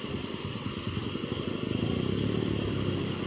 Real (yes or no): yes